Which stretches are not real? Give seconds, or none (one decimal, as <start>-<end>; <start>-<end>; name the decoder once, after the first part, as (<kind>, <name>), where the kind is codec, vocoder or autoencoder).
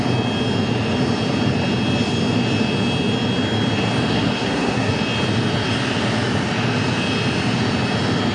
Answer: 4.1-4.9 (codec, SNAC)